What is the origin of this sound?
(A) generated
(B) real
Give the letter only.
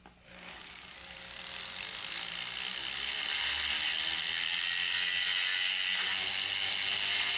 B